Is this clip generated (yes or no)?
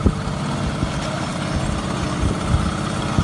no